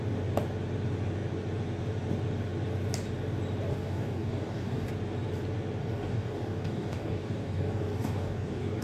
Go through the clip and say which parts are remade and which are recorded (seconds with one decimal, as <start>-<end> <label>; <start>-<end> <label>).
0.0-3.7 recorded; 3.7-4.9 remade; 4.9-5.8 recorded; 5.8-8.8 remade